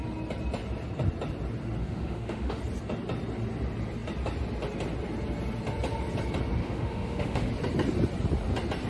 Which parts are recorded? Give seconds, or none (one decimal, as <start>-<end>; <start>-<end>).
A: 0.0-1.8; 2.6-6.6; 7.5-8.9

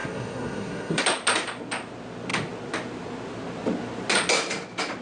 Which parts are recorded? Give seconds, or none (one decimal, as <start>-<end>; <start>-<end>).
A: 1.0-5.0

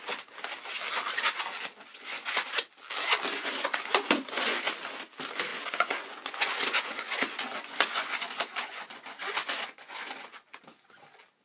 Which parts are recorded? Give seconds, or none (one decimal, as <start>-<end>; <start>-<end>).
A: 0.0-1.9; 2.6-3.3; 4.7-5.5; 10.6-11.4

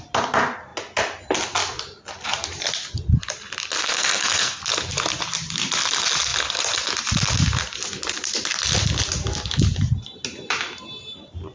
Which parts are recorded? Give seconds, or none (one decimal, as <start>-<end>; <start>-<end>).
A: 0.0-3.8; 4.6-11.5